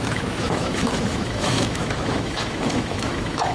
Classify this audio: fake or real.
fake